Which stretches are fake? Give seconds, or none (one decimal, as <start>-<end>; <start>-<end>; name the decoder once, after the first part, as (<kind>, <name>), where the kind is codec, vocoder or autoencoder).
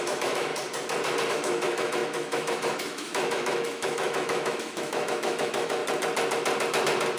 0.0-0.5 (autoencoder, DAC-VAE); 1.3-5.8